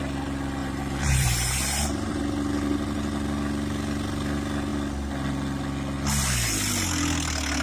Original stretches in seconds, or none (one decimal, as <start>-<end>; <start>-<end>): 0.0-0.6; 2.2-7.6